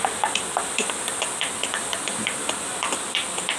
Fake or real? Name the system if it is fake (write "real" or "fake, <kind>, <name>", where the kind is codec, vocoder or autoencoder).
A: fake, vocoder, BigVGAN v2